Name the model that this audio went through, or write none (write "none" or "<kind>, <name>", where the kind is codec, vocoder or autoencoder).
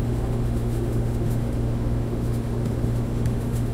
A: autoencoder, DAC-VAE